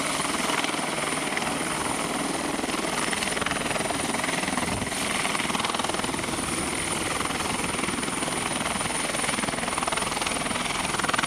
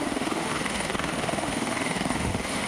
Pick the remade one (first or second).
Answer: second